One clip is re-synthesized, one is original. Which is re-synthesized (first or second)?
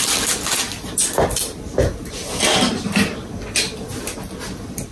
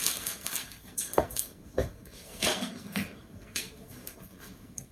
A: second